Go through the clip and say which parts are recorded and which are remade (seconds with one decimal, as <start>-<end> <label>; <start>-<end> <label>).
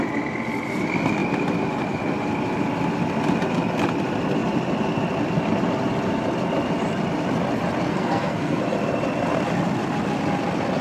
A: 0.0-7.9 recorded; 7.9-8.6 remade; 8.6-10.8 recorded